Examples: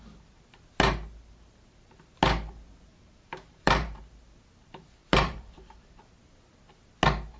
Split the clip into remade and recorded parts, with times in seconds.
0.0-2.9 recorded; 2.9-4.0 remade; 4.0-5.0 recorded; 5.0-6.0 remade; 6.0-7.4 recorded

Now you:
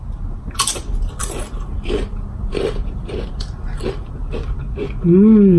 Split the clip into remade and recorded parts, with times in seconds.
0.0-1.2 recorded; 1.2-4.6 remade; 4.6-5.6 recorded

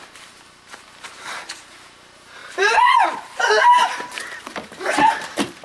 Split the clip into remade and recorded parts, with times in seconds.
0.0-5.6 remade

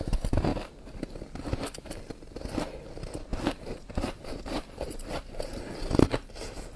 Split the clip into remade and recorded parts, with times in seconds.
0.0-0.5 recorded; 0.5-1.1 remade; 1.1-3.3 recorded; 3.3-5.6 remade; 5.6-6.8 recorded

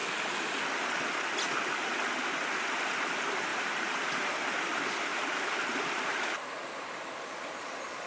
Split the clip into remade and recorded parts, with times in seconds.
0.0-3.5 recorded; 3.5-4.2 remade; 4.2-8.1 recorded

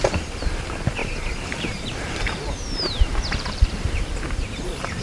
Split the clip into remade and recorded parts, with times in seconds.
0.0-1.0 recorded; 1.0-4.0 remade; 4.0-5.0 recorded